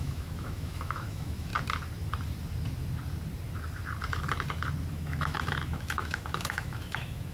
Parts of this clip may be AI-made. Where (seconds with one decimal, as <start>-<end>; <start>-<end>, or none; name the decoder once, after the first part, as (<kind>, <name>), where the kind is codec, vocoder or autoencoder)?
0.0-1.5 (autoencoder, DAC-VAE); 4.9-7.3